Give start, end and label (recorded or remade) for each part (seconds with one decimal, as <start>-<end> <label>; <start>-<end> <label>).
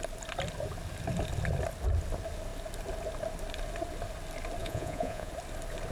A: 0.0-4.6 recorded; 4.6-5.3 remade; 5.3-5.9 recorded